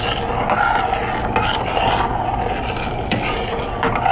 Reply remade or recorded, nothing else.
recorded